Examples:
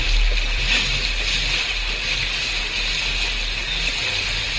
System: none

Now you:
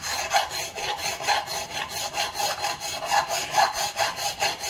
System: none